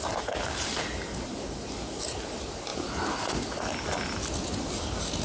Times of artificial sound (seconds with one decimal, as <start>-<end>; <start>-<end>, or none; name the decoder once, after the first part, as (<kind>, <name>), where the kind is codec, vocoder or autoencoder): none